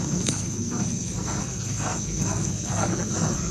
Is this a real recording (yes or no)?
no